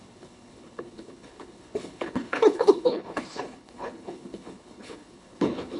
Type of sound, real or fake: fake